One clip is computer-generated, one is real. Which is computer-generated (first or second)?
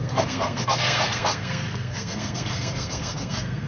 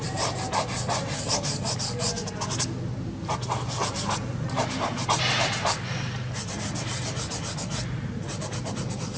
first